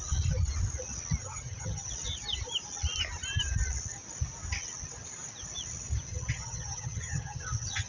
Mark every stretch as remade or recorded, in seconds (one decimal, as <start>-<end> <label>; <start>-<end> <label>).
0.0-1.2 recorded; 1.2-1.9 remade; 1.9-6.1 recorded; 6.1-7.9 remade